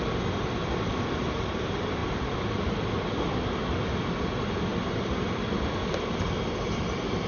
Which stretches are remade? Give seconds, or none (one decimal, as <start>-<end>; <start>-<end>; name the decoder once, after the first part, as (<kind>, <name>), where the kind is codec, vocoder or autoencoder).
2.0-2.8 (vocoder, BigVGAN v2)

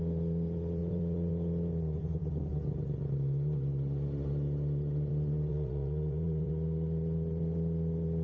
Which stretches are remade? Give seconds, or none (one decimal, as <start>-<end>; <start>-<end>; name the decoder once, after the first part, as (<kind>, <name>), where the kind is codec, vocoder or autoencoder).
0.8-1.3 (vocoder, Vocos); 5.5-6.5

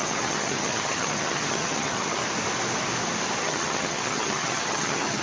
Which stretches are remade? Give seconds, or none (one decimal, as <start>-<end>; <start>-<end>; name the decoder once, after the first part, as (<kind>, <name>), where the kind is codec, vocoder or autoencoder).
0.0-2.2 (vocoder, HiFi-GAN); 3.4-5.2